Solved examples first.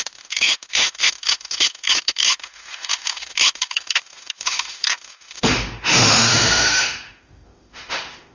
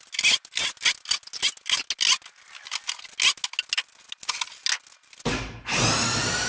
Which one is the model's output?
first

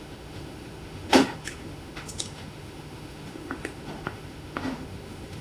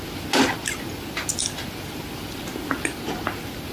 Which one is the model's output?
first